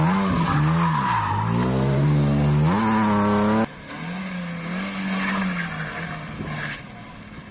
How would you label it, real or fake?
real